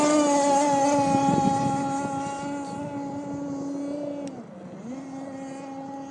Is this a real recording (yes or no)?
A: yes